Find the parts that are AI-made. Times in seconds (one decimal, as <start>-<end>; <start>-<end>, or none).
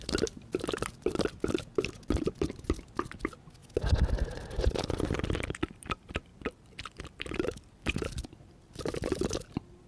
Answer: 0.0-3.6; 4.7-9.9